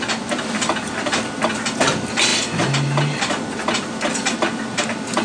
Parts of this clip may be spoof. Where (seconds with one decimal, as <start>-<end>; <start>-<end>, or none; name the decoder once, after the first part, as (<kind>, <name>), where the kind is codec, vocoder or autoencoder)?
none